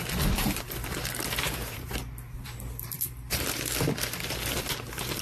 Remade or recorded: remade